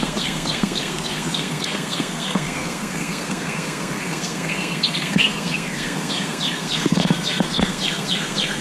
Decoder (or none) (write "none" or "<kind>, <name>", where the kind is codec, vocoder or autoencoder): codec, SNAC